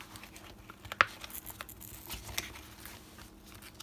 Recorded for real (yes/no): yes